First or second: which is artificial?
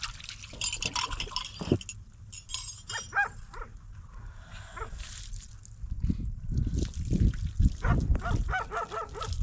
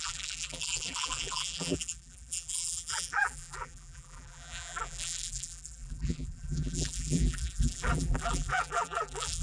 second